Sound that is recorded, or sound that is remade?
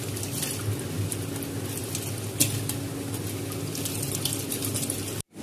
recorded